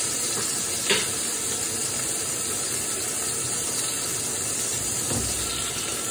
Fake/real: real